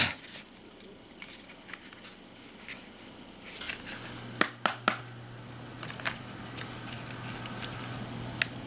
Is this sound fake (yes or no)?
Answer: no